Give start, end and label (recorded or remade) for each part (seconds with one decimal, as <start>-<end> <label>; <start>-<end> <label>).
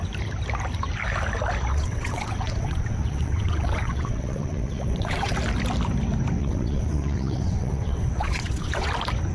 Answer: 0.0-1.7 recorded; 1.7-5.3 remade; 5.3-6.4 recorded; 6.4-8.9 remade; 8.9-9.3 recorded